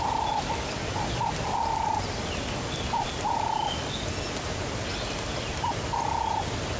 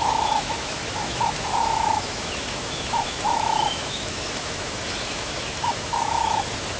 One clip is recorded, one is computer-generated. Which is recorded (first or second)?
first